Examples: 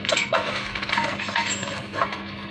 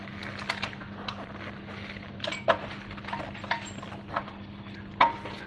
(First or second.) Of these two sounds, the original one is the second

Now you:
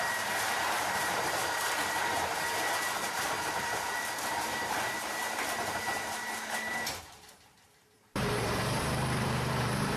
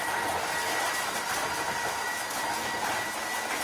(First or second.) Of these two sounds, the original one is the second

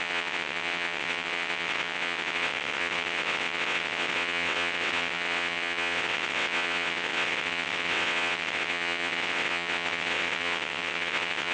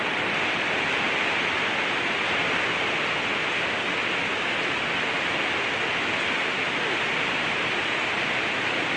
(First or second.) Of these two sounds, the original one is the second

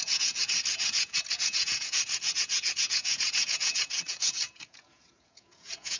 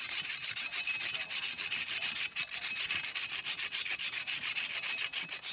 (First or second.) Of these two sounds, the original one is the second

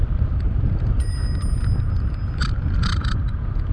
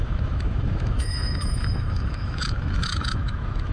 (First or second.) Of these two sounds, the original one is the first